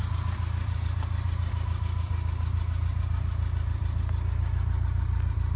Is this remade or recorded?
recorded